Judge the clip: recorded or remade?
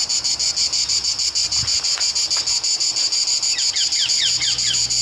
recorded